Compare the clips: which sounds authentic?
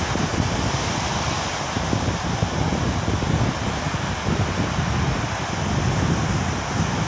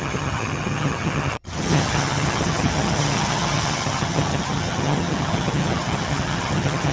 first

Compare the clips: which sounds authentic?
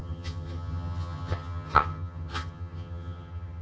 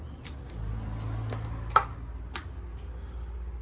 second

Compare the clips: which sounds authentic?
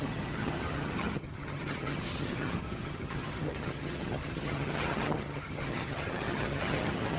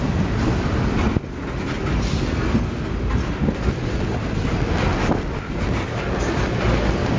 second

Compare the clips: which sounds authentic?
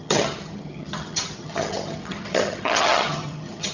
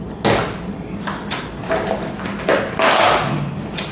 second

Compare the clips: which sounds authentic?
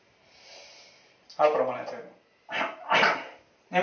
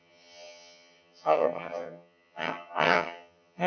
first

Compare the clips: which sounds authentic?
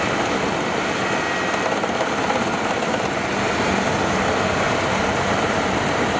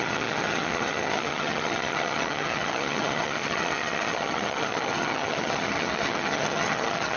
first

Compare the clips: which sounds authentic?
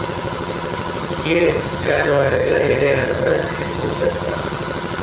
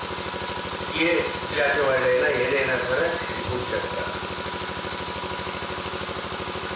second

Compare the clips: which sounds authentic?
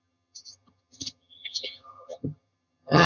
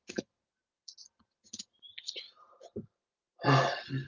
second